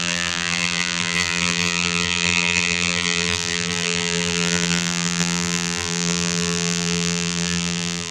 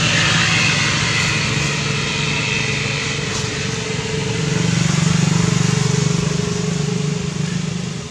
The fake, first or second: first